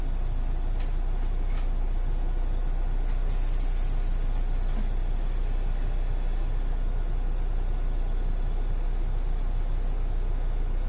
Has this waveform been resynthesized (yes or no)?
no